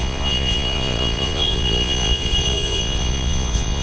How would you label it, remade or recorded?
remade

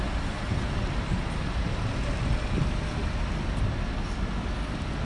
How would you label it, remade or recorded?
recorded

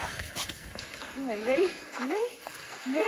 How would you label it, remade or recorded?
remade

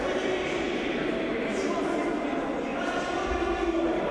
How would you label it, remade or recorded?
recorded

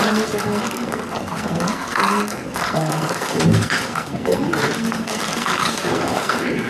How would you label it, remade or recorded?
remade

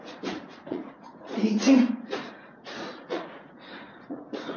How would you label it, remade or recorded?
remade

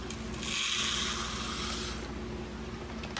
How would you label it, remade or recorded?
recorded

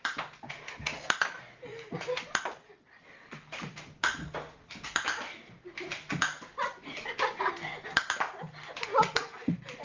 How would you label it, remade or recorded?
recorded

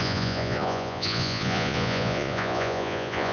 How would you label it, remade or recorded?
remade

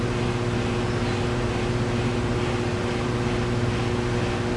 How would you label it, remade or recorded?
recorded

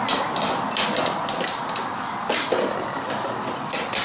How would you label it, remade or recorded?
recorded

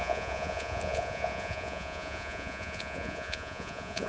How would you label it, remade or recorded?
remade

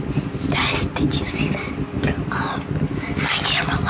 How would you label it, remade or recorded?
recorded